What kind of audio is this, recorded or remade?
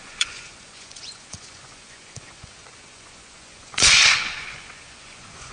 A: remade